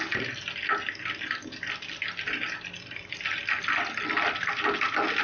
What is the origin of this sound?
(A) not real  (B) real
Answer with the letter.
B